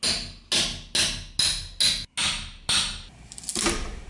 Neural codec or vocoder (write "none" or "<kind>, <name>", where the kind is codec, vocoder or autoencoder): none